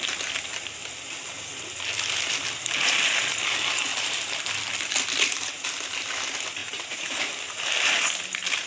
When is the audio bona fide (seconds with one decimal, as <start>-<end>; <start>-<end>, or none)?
0.0-6.6; 7.4-8.7